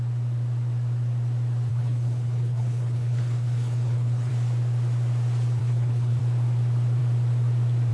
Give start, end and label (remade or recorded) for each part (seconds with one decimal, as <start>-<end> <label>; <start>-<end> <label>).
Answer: 0.0-1.7 recorded; 1.7-4.3 remade; 4.3-5.6 recorded; 5.6-6.2 remade; 6.2-7.9 recorded